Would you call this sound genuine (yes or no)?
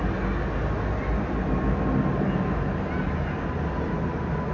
yes